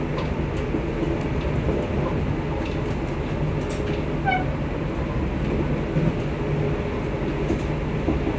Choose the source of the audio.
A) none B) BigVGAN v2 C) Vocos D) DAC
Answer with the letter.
A